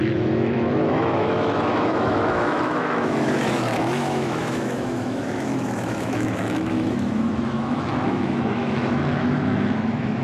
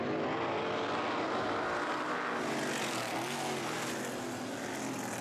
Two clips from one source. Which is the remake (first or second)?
first